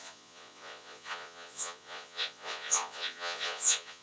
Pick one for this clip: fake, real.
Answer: fake